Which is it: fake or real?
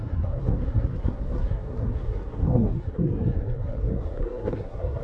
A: fake